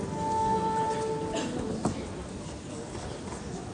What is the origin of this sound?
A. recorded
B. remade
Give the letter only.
A